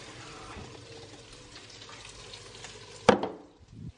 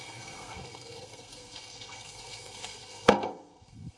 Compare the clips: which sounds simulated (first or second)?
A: second